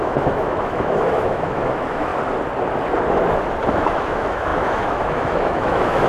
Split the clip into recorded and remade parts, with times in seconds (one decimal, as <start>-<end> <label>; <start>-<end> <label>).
0.0-2.1 remade; 2.1-3.7 recorded; 3.7-6.1 remade